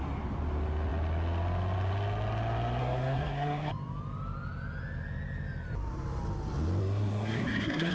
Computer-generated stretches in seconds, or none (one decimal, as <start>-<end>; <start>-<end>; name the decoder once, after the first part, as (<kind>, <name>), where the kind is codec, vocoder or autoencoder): 2.8-3.7 (codec, SNAC); 6.8-7.9